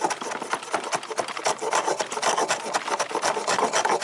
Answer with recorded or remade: recorded